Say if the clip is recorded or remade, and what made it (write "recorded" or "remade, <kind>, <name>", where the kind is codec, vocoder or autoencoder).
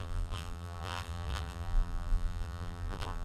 remade, vocoder, BigVGAN v2